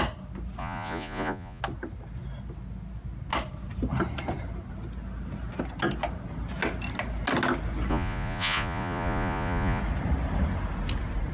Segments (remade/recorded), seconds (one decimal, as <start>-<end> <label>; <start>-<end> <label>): 0.0-0.6 recorded; 0.6-1.6 remade; 1.6-7.9 recorded; 7.9-9.8 remade; 9.8-11.3 recorded